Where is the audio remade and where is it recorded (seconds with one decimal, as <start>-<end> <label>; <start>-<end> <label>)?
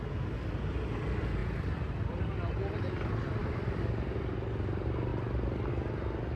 0.0-1.4 recorded; 1.4-2.2 remade; 2.2-3.4 recorded; 3.4-3.9 remade; 3.9-5.1 recorded; 5.1-5.7 remade; 5.7-6.4 recorded